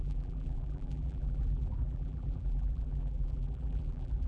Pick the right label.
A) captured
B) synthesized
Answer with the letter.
B